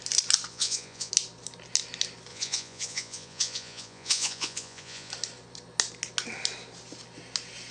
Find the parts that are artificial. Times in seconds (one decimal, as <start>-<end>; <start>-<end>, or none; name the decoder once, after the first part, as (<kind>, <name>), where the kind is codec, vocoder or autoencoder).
0.5-1.1 (vocoder, Vocos); 2.3-5.1